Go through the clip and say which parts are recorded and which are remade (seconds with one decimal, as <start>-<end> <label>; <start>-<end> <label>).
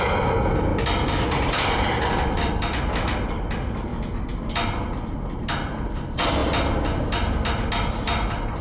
0.0-8.6 recorded